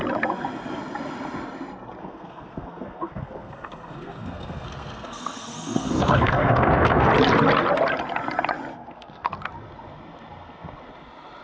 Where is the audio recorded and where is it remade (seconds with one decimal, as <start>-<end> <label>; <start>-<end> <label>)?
0.0-2.0 recorded; 2.0-7.1 remade; 7.1-8.7 recorded; 8.7-9.3 remade; 9.3-11.4 recorded